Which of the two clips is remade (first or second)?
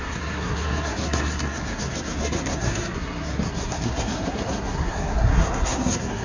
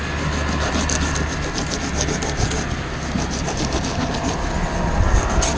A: first